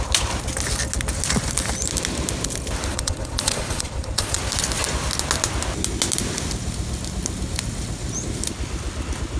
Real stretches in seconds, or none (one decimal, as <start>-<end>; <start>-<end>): 0.0-2.9; 4.4-9.4